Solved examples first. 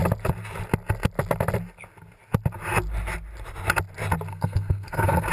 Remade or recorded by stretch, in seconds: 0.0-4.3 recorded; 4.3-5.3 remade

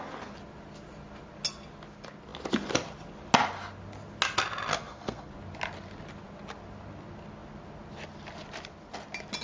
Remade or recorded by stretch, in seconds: 0.0-4.7 recorded; 4.7-5.3 remade; 5.3-9.4 recorded